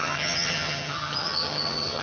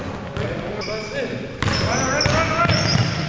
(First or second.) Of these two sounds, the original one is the second